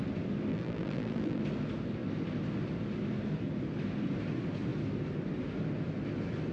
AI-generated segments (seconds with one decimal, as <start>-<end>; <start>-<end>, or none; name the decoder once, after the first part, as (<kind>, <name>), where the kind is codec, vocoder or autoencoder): 0.5-1.4 (vocoder, BigVGAN v2)